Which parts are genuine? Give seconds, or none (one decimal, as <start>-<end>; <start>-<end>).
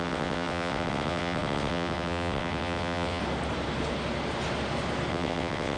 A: 3.2-5.1